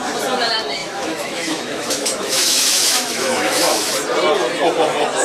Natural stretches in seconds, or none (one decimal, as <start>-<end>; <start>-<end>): 0.0-0.8; 3.9-5.2